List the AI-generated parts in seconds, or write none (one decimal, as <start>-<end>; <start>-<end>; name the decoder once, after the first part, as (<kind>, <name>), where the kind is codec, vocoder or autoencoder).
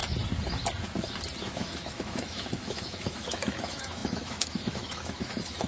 1.4-5.7 (autoencoder, DAC-VAE)